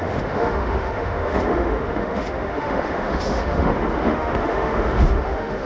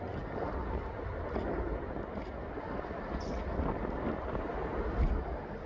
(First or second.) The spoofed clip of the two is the first